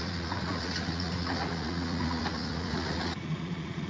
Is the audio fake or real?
fake